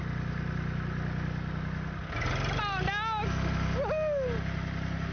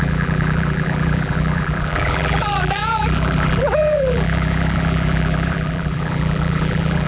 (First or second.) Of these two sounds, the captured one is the first